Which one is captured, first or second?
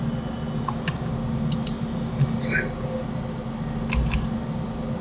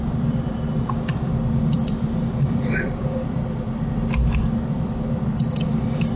first